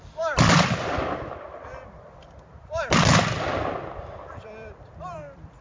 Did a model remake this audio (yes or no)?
yes